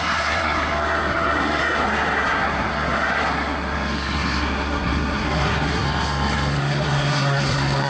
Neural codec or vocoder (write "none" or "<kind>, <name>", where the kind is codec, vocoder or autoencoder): codec, SNAC